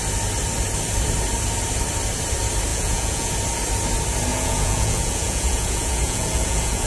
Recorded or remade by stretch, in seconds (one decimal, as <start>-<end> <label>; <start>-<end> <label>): 0.0-2.7 recorded; 2.7-3.3 remade; 3.3-4.3 recorded; 4.3-6.9 remade